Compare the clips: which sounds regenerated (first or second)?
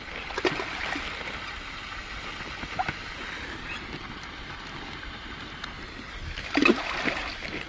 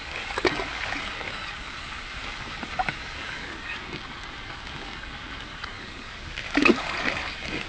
second